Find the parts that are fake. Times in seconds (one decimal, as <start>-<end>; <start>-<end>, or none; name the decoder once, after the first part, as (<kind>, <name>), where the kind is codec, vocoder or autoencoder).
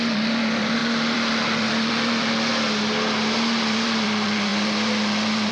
0.0-2.5 (vocoder, BigVGAN v2); 3.6-5.5